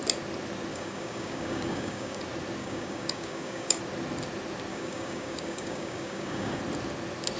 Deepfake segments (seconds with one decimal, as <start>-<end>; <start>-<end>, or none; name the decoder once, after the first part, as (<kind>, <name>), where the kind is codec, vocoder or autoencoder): 0.7-2.2 (codec, DAC); 2.6-3.8; 4.7-6.6